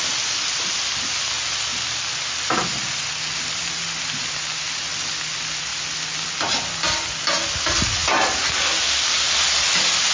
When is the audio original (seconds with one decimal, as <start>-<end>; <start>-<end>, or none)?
0.0-1.7; 2.2-10.1